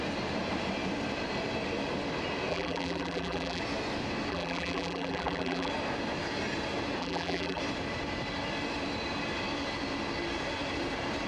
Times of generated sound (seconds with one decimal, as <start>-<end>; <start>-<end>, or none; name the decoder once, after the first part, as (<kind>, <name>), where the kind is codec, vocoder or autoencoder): 2.5-3.6 (vocoder, BigVGAN v2); 4.3-5.7; 7.0-7.6